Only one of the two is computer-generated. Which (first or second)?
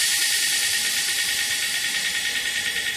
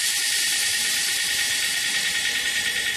second